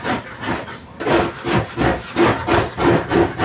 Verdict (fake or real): real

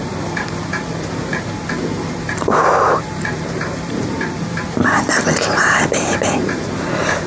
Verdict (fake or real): fake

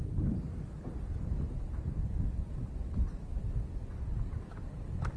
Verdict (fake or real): fake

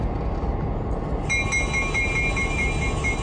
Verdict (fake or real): real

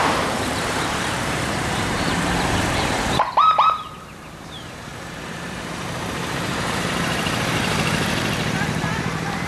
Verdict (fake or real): fake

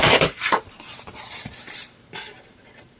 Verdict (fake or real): fake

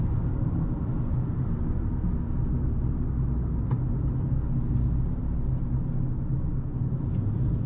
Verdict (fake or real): real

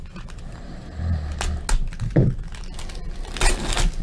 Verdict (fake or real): real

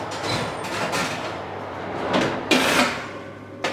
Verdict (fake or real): fake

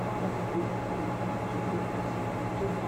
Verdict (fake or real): real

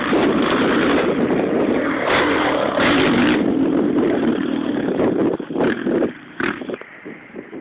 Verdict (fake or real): fake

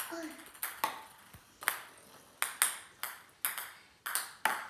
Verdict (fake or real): real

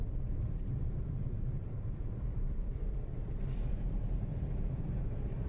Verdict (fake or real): fake